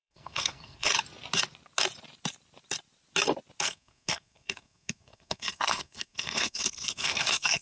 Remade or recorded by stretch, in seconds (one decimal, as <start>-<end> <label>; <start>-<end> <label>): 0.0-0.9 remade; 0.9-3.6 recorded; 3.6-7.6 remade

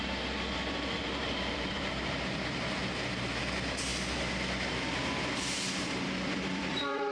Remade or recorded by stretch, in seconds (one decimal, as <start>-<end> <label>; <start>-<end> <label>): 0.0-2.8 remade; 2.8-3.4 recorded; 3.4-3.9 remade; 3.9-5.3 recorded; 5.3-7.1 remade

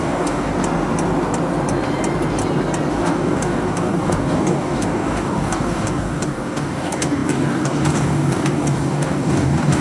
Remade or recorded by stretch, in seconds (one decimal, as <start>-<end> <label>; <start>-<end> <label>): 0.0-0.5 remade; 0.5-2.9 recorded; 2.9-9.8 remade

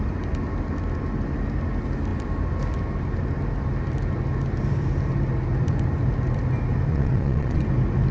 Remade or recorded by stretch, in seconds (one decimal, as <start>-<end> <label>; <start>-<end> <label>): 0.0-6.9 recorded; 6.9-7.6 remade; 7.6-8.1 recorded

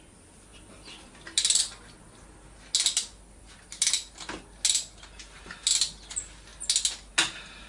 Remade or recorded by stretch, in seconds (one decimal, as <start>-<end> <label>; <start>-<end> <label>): 0.0-7.7 recorded

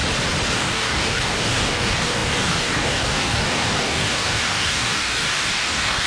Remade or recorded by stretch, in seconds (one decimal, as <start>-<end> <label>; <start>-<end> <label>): 0.0-0.5 recorded; 0.5-6.1 remade

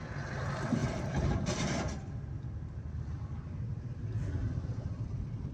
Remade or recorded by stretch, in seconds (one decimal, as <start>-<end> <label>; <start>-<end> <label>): 0.0-0.8 recorded; 0.8-1.8 remade; 1.8-4.4 recorded; 4.4-5.5 remade

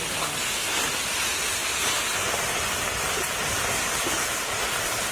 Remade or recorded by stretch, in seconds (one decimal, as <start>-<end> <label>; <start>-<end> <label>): 0.0-1.6 recorded; 1.6-4.3 remade; 4.3-5.1 recorded